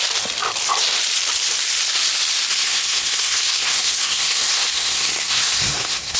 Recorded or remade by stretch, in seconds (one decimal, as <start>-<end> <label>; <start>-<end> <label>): 0.0-2.5 recorded; 2.5-6.2 remade